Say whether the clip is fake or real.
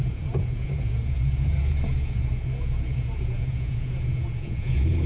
fake